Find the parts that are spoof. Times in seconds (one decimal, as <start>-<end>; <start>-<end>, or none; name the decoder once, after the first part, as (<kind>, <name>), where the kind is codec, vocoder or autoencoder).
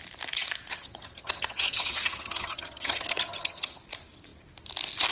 0.7-3.8 (vocoder, HiFi-GAN)